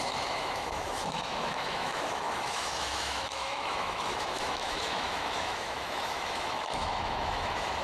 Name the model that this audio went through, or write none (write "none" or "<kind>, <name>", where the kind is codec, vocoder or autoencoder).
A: autoencoder, DAC-VAE